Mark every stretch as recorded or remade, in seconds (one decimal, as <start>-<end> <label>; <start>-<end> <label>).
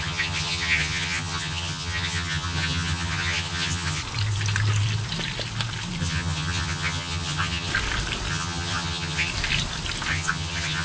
0.0-4.0 remade; 4.0-6.0 recorded; 6.0-7.7 remade; 7.7-8.3 recorded; 8.3-9.3 remade; 9.3-10.1 recorded; 10.1-10.8 remade